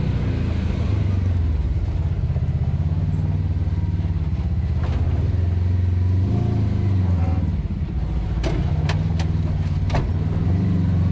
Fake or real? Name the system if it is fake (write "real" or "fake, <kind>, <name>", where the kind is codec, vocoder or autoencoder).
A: real